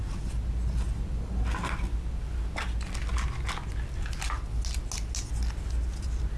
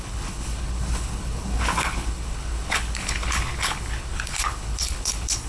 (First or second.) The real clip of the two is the first